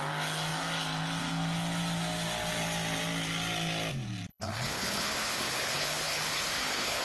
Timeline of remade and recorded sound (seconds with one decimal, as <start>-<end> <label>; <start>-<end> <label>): 0.0-4.3 recorded; 4.3-7.0 remade

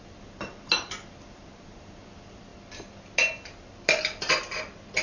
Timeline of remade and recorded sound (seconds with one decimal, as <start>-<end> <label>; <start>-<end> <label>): 0.0-5.0 recorded

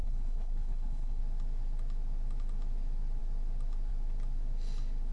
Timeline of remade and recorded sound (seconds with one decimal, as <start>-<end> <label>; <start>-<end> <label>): 0.0-1.2 remade; 1.2-5.1 recorded

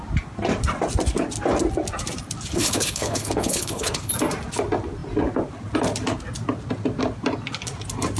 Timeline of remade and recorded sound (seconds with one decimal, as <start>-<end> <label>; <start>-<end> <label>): 0.0-2.5 recorded; 2.5-4.1 remade; 4.1-8.2 recorded